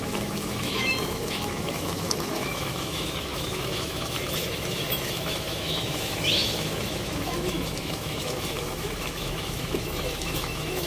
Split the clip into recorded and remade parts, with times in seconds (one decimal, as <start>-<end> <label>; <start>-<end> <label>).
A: 0.0-10.9 remade